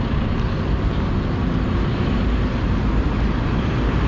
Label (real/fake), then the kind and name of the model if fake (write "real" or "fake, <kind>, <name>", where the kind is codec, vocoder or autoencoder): real